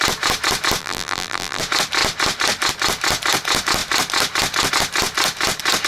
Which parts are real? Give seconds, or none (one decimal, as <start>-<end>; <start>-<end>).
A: 0.0-0.8; 1.6-5.9